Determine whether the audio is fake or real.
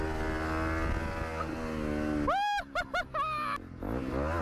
real